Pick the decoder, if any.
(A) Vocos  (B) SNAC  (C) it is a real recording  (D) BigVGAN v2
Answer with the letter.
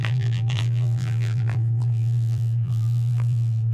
D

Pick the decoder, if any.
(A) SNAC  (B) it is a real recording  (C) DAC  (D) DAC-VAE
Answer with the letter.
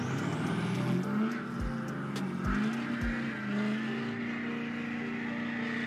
B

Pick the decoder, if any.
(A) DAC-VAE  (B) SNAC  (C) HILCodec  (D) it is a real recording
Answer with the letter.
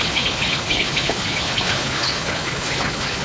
C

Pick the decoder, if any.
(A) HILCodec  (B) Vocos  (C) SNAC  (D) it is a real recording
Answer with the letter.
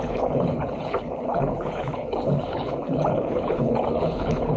A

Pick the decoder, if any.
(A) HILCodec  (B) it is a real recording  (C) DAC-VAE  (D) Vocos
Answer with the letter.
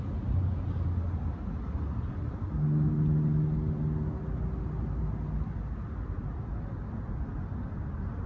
B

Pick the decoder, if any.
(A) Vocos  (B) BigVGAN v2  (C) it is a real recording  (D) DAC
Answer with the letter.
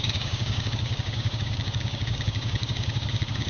D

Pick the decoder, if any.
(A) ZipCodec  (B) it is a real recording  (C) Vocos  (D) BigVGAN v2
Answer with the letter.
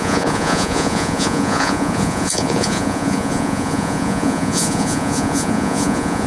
C